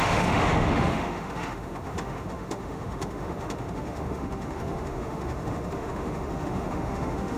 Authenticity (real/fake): fake